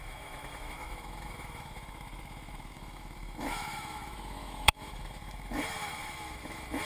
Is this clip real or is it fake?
fake